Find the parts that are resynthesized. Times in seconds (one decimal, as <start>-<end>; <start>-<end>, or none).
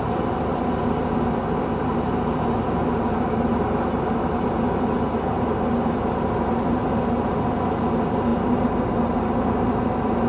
none